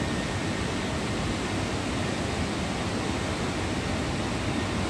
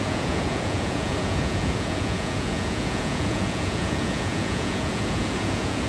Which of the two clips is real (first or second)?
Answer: first